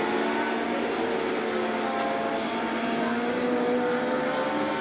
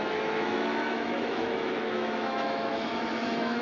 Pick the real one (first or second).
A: first